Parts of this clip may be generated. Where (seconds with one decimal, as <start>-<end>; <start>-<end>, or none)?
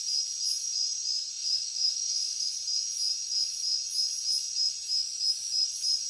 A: 1.4-2.5